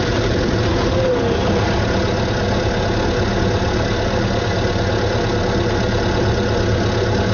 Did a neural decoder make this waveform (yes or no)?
no